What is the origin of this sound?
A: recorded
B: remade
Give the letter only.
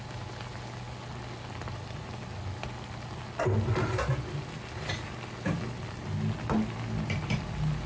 A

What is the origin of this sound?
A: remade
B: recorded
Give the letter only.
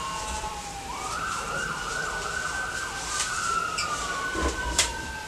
A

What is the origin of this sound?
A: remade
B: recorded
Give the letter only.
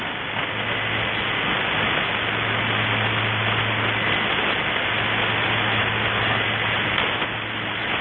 B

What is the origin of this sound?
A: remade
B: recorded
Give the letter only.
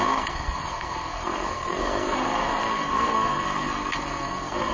A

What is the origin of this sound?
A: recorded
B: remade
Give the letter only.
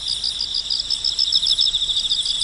A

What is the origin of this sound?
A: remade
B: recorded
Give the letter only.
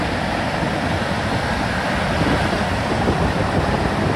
B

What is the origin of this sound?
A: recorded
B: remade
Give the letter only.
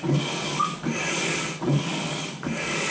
B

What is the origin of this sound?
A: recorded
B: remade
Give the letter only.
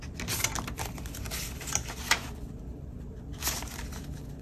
A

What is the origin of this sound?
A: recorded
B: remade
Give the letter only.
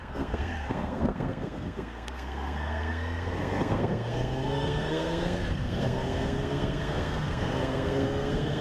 B